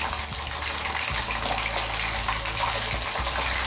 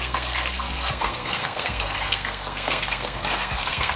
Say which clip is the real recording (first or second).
first